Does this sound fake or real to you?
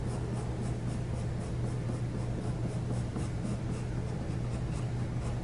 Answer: real